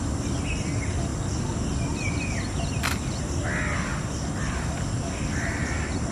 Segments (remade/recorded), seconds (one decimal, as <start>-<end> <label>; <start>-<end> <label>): 0.0-3.9 recorded; 3.9-5.6 remade; 5.6-6.1 recorded